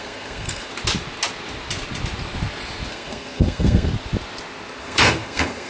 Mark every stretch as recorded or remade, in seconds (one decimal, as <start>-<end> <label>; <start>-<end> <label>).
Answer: 0.0-0.7 remade; 0.7-2.9 recorded; 2.9-3.9 remade; 3.9-4.8 recorded; 4.8-5.7 remade